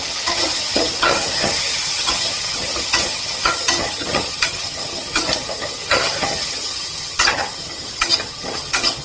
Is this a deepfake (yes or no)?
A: yes